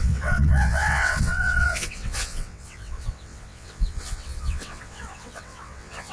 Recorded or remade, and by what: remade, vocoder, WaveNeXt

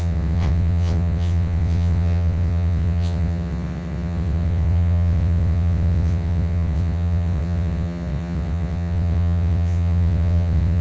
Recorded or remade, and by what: remade, vocoder, WaveNeXt